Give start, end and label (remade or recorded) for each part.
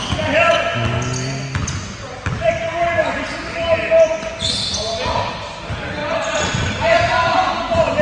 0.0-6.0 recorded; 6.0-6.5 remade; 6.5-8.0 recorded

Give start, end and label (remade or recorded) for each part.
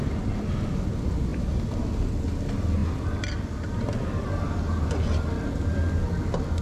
0.0-1.3 recorded; 1.3-2.1 remade; 2.1-6.6 recorded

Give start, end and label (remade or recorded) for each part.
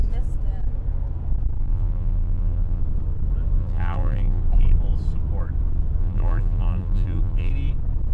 0.0-1.6 recorded; 1.6-2.8 remade; 2.8-3.6 recorded; 3.6-4.4 remade; 4.4-6.0 recorded; 6.0-7.5 remade; 7.5-8.1 recorded